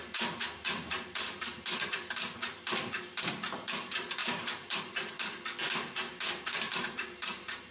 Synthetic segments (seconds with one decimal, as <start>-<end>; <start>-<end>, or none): 4.2-4.8; 6.7-7.7